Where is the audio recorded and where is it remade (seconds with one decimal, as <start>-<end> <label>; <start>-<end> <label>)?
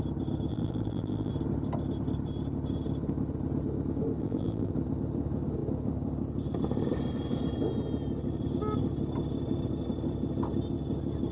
0.0-0.5 recorded; 0.5-1.3 remade; 1.3-4.2 recorded; 4.2-4.7 remade; 4.7-11.3 recorded